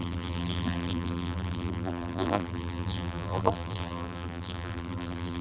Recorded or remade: remade